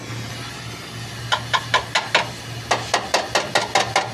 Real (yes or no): yes